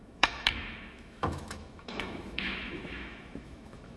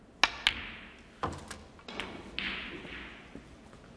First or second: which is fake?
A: first